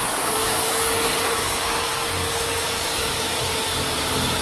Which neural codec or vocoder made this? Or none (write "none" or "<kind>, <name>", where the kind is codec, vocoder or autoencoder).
codec, DAC